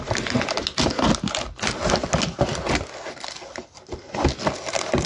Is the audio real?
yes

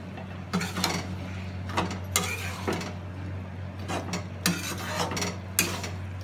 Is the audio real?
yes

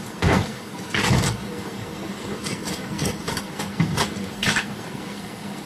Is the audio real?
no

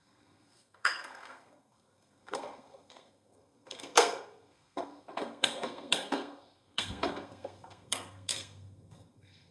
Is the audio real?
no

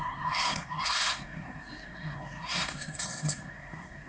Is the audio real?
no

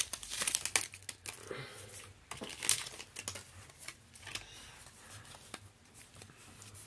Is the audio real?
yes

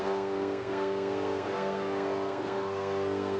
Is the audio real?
no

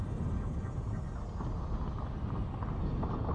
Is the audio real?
yes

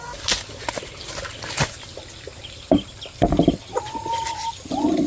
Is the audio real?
yes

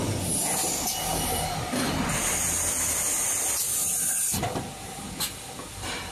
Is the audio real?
yes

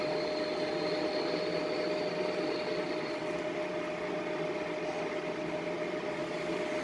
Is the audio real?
yes